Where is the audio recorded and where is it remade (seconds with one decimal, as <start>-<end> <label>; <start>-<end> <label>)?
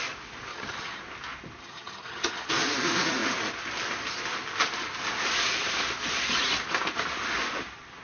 0.0-0.5 recorded; 0.5-1.0 remade; 1.0-1.6 recorded; 1.6-2.5 remade; 2.5-8.0 recorded